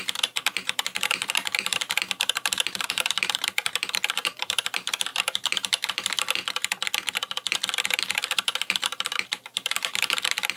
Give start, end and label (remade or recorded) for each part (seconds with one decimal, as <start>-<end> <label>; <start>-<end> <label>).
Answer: 0.0-6.4 remade; 6.4-7.8 recorded; 7.8-10.6 remade